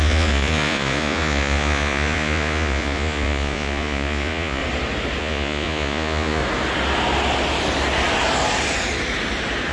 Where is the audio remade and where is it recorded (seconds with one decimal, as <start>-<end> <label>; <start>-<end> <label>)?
0.0-4.6 remade; 4.6-5.2 recorded; 5.2-6.4 remade; 6.4-9.7 recorded